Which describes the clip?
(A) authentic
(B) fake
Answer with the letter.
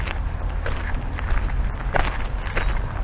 A